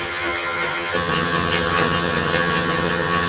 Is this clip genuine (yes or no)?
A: no